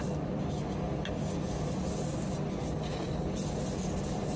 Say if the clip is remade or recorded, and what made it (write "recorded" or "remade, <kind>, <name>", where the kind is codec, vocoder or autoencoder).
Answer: recorded